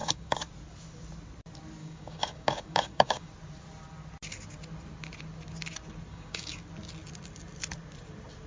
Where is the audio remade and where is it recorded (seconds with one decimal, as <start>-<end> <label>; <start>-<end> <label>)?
0.0-0.5 remade; 0.5-1.8 recorded; 1.8-3.3 remade; 3.3-6.1 recorded; 6.1-6.6 remade; 6.6-8.5 recorded